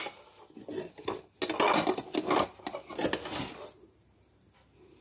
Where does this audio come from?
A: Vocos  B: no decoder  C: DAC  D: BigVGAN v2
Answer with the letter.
B